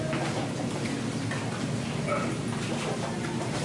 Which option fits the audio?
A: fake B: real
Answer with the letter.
B